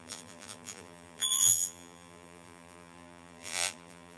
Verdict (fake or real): fake